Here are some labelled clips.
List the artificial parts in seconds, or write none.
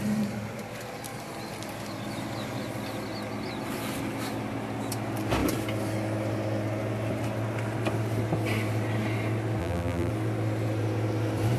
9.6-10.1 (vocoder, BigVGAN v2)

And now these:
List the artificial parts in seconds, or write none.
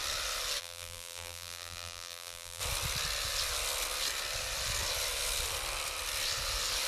0.6-2.6 (vocoder, BigVGAN v2)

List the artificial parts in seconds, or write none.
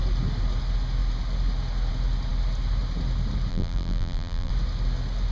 3.5-4.5 (vocoder, BigVGAN v2)